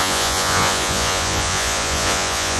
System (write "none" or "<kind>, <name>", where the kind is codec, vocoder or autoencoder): vocoder, Vocos